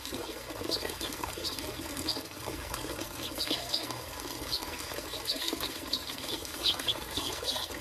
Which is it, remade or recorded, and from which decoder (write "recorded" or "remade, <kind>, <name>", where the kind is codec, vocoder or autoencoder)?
remade, codec, SNAC